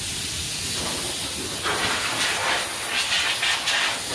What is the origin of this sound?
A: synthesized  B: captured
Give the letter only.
B